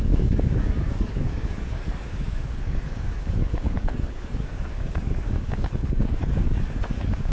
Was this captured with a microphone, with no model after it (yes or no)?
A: no